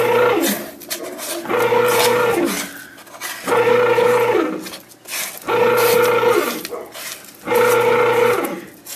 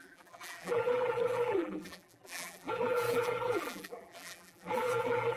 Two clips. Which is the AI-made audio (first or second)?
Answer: second